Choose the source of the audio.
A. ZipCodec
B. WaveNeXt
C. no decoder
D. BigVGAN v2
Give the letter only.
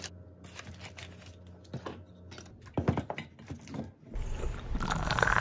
C